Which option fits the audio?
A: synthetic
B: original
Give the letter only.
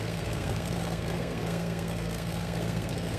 A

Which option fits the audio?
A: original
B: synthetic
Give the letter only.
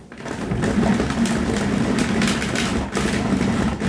A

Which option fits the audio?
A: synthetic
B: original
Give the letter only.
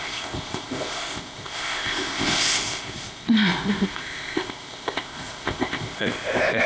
A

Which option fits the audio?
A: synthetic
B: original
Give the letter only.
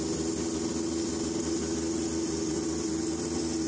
B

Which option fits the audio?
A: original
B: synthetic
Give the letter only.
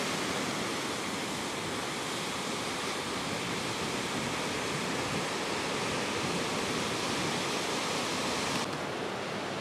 A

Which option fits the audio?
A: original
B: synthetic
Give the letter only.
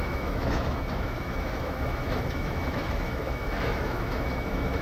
B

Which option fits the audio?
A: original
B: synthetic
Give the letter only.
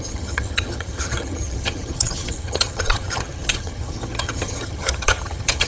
B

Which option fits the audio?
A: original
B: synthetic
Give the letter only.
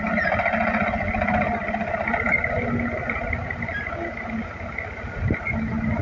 A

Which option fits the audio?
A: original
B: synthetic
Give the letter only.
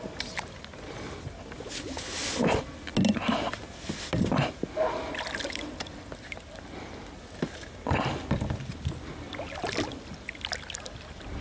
A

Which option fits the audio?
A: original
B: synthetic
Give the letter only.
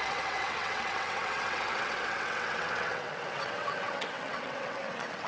B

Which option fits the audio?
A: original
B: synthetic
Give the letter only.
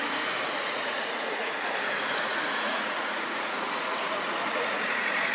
B